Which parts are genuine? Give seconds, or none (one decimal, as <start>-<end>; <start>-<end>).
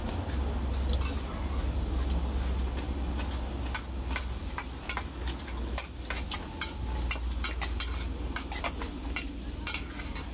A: 0.0-10.3